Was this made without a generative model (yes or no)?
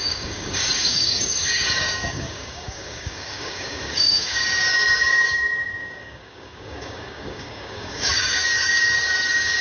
no